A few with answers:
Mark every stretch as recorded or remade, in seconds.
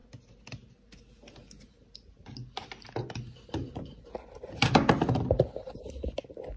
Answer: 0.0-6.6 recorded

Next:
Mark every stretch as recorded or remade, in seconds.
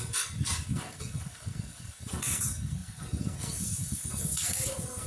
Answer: 0.0-5.1 remade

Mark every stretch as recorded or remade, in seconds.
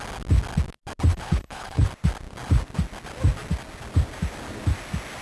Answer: 0.0-1.1 recorded; 1.1-1.9 remade; 1.9-5.2 recorded